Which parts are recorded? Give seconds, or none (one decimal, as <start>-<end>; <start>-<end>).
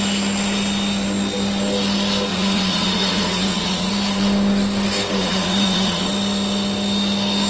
0.0-2.3; 3.9-5.1; 6.1-7.5